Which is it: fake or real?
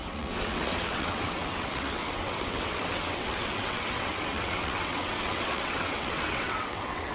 fake